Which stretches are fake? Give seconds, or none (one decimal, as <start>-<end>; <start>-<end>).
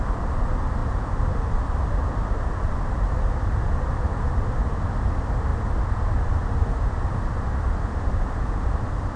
none